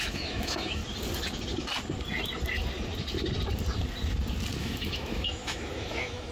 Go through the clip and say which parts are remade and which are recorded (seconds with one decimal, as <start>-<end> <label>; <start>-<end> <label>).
0.0-0.8 remade; 0.8-4.6 recorded; 4.6-6.3 remade

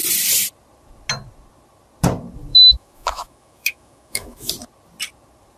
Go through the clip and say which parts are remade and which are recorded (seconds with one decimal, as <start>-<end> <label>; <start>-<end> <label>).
0.0-2.5 recorded; 2.5-4.5 remade; 4.5-5.6 recorded

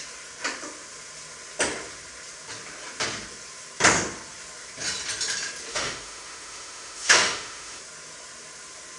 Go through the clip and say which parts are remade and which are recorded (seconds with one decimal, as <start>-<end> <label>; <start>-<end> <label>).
0.0-5.7 recorded; 5.7-7.8 remade; 7.8-9.0 recorded

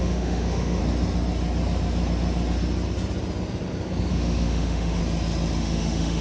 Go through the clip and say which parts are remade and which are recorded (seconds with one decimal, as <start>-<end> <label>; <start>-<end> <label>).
0.0-0.8 remade; 0.8-4.1 recorded; 4.1-5.0 remade; 5.0-5.6 recorded; 5.6-6.2 remade

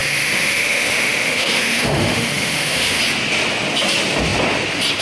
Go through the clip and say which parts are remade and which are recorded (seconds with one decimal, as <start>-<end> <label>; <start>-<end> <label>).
0.0-3.0 remade; 3.0-5.0 recorded

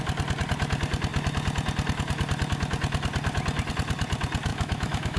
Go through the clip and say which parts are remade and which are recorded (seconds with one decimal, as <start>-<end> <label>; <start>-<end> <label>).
0.0-4.5 recorded; 4.5-5.2 remade

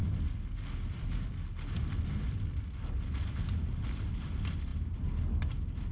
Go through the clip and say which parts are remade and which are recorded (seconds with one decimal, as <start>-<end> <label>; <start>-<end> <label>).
0.0-5.9 recorded

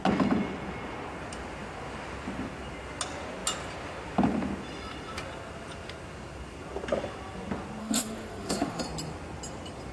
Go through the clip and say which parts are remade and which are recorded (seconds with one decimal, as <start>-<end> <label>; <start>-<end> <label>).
0.0-7.8 recorded; 7.8-8.8 remade; 8.8-9.9 recorded